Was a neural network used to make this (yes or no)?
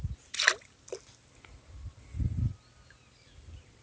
no